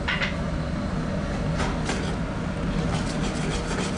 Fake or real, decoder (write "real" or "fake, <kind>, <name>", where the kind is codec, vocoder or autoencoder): real